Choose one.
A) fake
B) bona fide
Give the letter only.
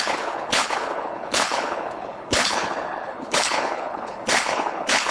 A